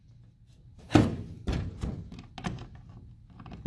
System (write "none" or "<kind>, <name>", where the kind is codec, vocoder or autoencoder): none